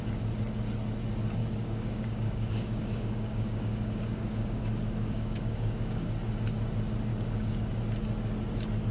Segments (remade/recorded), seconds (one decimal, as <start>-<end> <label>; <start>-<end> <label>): 0.0-1.4 recorded; 1.4-6.1 remade; 6.1-7.1 recorded; 7.1-7.7 remade; 7.7-8.9 recorded